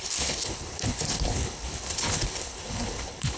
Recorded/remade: remade